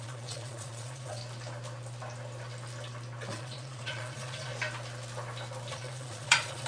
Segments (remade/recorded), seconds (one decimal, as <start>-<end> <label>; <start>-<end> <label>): 0.0-1.2 remade; 1.2-3.3 recorded; 3.3-4.5 remade; 4.5-5.7 recorded; 5.7-6.7 remade